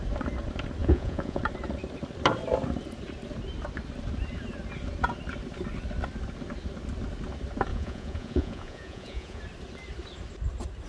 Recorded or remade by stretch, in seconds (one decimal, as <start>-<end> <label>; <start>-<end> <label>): 0.0-0.8 recorded; 0.8-1.4 remade; 1.4-7.7 recorded; 7.7-9.4 remade; 9.4-10.9 recorded